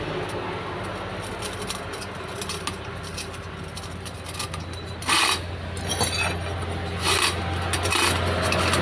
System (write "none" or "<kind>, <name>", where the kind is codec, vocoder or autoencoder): none